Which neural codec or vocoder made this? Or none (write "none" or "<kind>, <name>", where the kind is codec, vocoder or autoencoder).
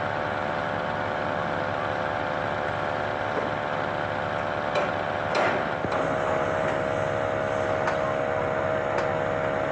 none